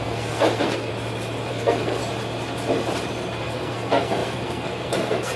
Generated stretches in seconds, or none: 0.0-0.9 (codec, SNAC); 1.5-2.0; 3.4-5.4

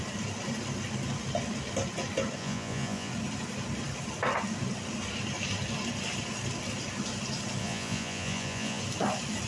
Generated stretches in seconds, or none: 2.4-3.1 (vocoder, Vocos); 7.6-8.8